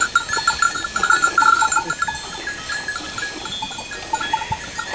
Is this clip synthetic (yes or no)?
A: no